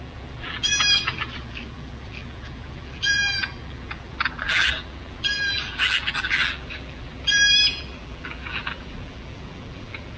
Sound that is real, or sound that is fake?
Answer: fake